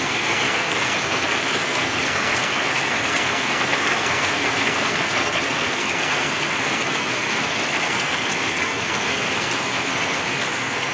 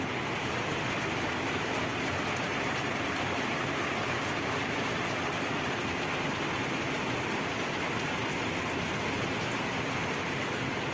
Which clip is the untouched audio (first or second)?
second